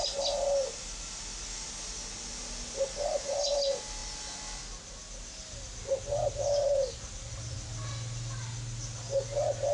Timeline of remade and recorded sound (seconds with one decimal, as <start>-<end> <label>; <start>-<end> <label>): 0.0-9.7 recorded